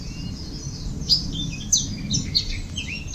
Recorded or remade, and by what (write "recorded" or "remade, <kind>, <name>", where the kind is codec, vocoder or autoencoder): recorded